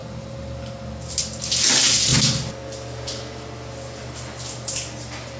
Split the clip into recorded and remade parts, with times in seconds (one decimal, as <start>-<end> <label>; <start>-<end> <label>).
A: 0.0-5.4 recorded